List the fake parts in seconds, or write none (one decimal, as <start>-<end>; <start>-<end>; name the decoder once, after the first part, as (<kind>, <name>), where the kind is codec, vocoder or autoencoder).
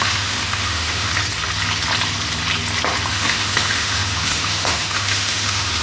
0.0-1.1 (autoencoder, DAC-VAE); 3.1-5.8